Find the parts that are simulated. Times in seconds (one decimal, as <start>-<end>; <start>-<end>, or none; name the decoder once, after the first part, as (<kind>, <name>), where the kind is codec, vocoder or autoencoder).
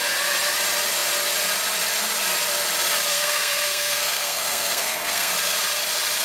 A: 3.1-5.3 (codec, SNAC)